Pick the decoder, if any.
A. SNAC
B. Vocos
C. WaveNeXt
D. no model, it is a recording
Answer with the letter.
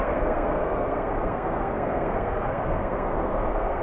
A